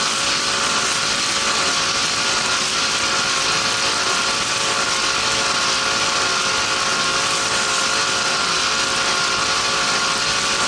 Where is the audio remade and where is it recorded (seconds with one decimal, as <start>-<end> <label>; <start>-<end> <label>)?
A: 0.0-10.7 recorded